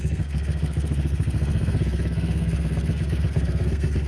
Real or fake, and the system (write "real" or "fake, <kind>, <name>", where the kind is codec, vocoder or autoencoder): fake, codec, SNAC